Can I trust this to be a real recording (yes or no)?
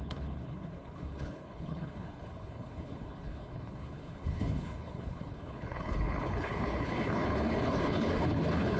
no